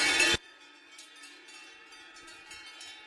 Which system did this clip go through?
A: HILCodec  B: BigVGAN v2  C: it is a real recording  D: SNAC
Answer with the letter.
B